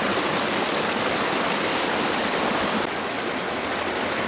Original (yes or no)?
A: yes